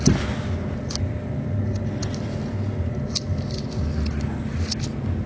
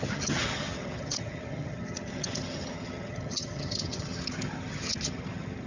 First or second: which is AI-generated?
second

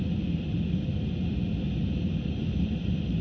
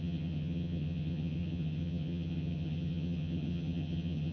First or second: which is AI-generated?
second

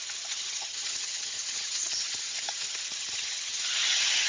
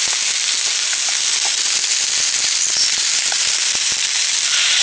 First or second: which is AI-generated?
first